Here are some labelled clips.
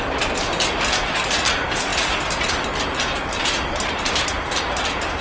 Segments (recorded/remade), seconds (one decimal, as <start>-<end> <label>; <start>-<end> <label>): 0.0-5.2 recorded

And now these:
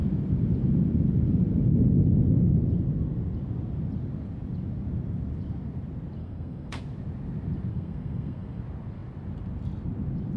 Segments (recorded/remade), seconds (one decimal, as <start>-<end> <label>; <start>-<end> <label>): 0.0-6.2 recorded; 6.2-6.8 remade; 6.8-7.7 recorded; 7.7-8.6 remade; 8.6-10.4 recorded

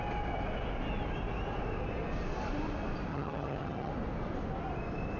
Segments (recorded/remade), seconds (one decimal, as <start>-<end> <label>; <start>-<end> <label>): 0.0-3.1 recorded; 3.1-3.9 remade; 3.9-5.2 recorded

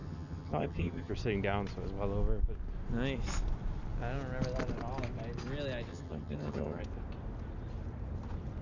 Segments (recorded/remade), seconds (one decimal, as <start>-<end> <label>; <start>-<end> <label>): 0.0-1.1 remade; 1.1-5.9 recorded; 5.9-6.8 remade; 6.8-8.6 recorded

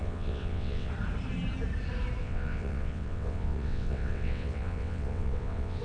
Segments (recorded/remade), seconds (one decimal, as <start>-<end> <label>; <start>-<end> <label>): 0.0-0.9 remade; 0.9-2.2 recorded; 2.2-5.8 remade

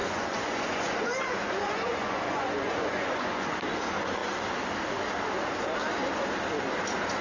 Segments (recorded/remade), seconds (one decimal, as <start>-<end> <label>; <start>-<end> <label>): 0.0-3.5 remade; 3.5-7.2 recorded